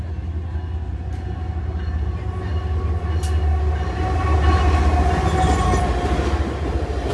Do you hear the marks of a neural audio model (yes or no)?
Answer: no